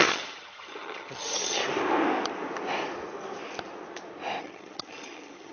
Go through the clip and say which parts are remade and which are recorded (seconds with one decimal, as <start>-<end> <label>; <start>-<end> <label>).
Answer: 0.0-1.6 remade; 1.6-4.4 recorded; 4.4-5.5 remade